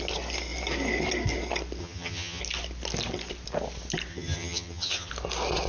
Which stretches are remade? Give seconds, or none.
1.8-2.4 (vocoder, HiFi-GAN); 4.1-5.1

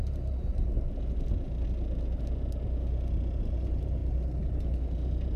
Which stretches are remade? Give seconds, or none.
4.0-4.5 (vocoder, BigVGAN v2)

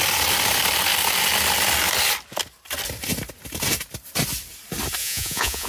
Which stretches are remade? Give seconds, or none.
5.0-5.7 (vocoder, Vocos)

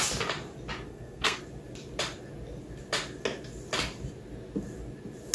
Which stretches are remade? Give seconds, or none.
0.9-1.4 (codec, SNAC)

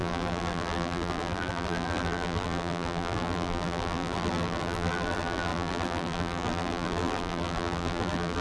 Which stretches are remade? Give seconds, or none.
0.0-8.4 (vocoder, BigVGAN v2)

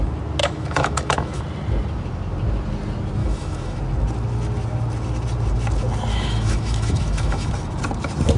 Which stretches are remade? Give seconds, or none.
0.4-1.4 (autoencoder, DAC-VAE); 3.2-3.8; 6.1-7.5

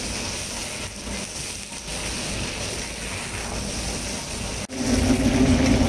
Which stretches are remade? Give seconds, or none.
none

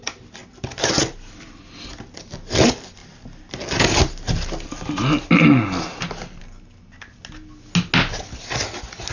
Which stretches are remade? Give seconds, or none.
none